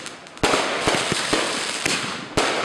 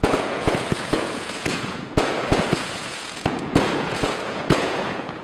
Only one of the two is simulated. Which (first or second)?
second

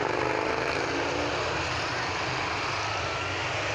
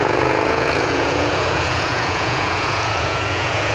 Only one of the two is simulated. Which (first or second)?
second